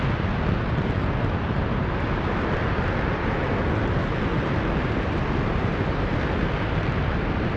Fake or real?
real